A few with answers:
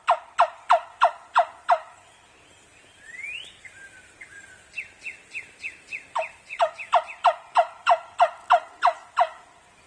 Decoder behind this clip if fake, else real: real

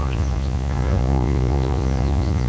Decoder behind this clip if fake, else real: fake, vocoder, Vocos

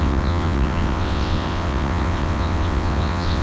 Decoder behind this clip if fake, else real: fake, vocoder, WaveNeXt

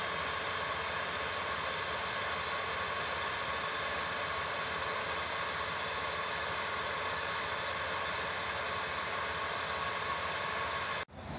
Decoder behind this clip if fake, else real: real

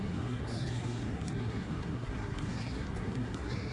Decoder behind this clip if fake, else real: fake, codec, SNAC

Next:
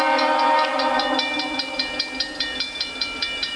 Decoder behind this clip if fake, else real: fake, vocoder, BigVGAN v2